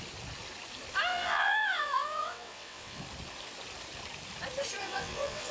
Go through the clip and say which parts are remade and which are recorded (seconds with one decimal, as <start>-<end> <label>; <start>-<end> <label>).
0.0-1.1 recorded; 1.1-3.0 remade; 3.0-4.8 recorded; 4.8-5.5 remade

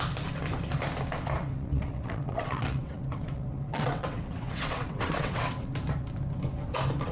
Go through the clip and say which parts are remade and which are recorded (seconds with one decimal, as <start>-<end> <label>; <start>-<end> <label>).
0.0-1.4 recorded; 1.4-5.7 remade; 5.7-7.1 recorded

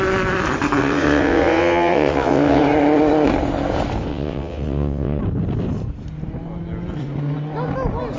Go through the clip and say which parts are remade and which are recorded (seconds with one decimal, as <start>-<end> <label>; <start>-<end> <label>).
0.0-0.8 recorded; 0.8-2.6 remade; 2.6-4.1 recorded; 4.1-5.2 remade; 5.2-8.2 recorded

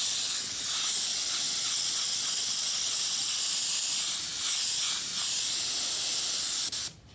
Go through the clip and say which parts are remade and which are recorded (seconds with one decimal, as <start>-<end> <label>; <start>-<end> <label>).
0.0-0.7 remade; 0.7-1.1 recorded; 1.1-3.4 remade; 3.4-7.1 recorded